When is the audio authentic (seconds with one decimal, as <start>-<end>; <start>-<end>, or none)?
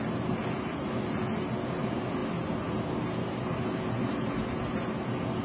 0.0-5.4